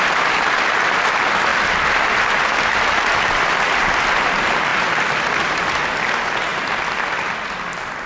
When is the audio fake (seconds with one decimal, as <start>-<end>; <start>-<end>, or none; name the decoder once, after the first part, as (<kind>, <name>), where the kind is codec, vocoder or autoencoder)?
none